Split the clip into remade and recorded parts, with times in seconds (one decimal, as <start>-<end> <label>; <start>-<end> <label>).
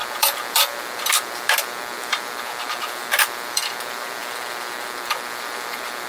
0.0-4.2 remade; 4.2-4.8 recorded; 4.8-6.1 remade